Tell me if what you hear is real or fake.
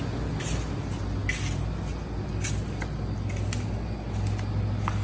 real